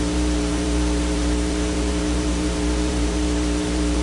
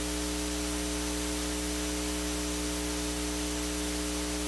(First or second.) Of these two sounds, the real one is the second